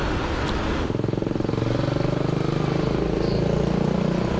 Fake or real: real